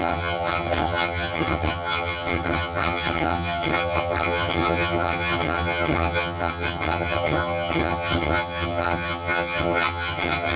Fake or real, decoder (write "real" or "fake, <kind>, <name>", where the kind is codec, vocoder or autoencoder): fake, vocoder, HiFi-GAN